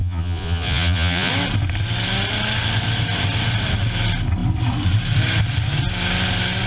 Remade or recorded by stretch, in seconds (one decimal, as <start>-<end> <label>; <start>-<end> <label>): 0.0-1.3 remade; 1.3-6.7 recorded